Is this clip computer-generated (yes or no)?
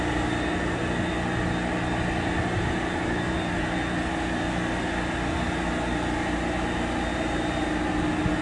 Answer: no